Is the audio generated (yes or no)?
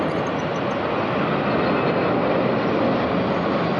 no